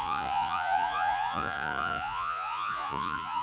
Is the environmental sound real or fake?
fake